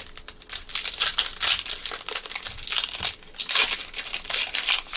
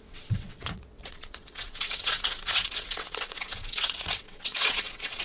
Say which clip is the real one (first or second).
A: first